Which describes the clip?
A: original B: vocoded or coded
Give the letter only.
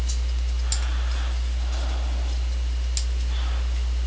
A